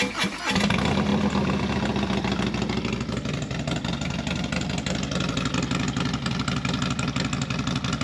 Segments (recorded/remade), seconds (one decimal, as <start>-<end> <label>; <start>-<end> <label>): 0.0-8.0 recorded